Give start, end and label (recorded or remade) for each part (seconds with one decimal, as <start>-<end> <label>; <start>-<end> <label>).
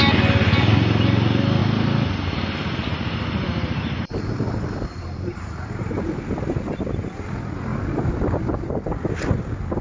0.0-1.6 recorded; 1.6-4.2 remade; 4.2-4.9 recorded; 4.9-6.2 remade; 6.2-7.7 recorded; 7.7-8.9 remade; 8.9-9.8 recorded